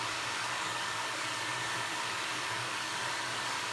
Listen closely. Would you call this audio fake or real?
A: fake